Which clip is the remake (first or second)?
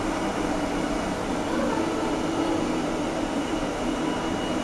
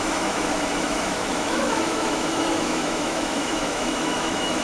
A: second